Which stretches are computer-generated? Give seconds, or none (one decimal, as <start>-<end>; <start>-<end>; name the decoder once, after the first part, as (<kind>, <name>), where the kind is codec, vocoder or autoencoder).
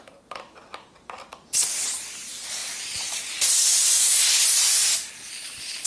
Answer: none